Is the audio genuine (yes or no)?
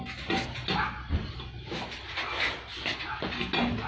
yes